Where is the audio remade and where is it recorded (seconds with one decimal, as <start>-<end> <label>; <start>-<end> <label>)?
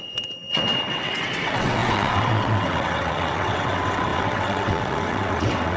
0.0-5.8 remade